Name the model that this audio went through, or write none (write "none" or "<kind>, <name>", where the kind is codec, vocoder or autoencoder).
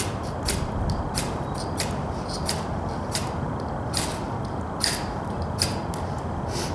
none